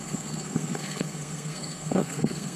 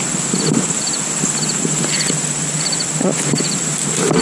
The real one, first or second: second